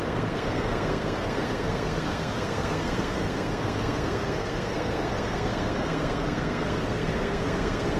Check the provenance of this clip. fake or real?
fake